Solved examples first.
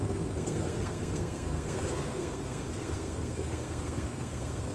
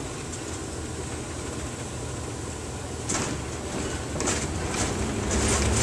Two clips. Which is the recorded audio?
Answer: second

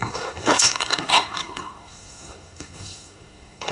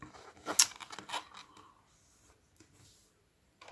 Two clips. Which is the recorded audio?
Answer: second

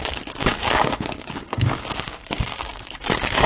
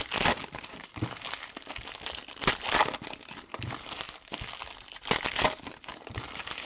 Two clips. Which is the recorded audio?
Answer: second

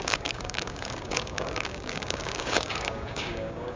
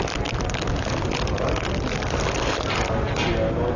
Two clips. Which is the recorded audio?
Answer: second